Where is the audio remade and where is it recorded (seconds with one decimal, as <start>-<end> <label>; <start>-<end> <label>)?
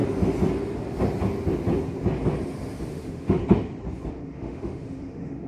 0.0-2.9 recorded; 2.9-3.4 remade; 3.4-4.1 recorded; 4.1-5.5 remade